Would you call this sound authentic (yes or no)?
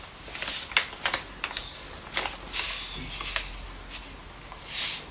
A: yes